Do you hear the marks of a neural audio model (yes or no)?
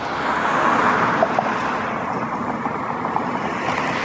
no